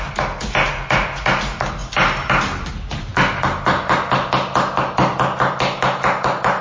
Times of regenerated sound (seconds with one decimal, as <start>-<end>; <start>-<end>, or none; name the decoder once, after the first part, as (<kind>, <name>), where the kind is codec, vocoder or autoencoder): none